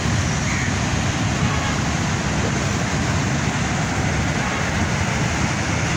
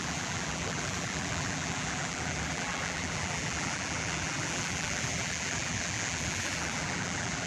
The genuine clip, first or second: first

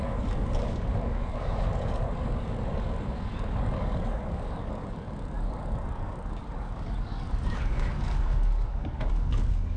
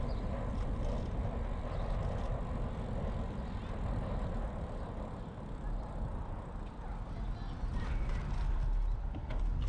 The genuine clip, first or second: second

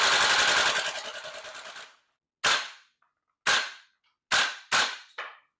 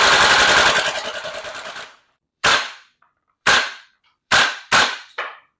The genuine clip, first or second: first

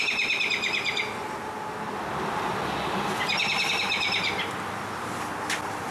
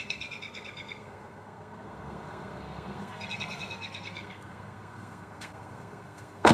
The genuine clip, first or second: first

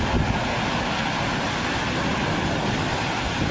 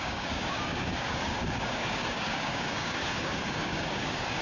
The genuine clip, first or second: first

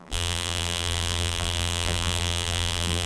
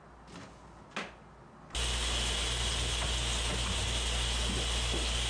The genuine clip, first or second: second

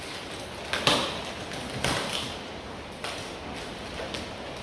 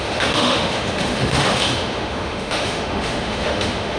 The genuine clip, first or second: first